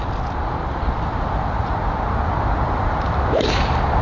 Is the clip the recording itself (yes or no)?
yes